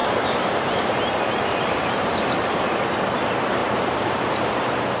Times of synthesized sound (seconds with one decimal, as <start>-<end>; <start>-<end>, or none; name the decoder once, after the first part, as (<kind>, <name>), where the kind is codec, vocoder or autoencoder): 0.0-2.6 (vocoder, BigVGAN v2); 3.6-4.1